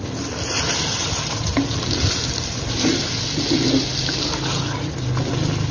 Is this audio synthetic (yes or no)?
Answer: no